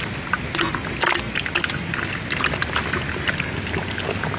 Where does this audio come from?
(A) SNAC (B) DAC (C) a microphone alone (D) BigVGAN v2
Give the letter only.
C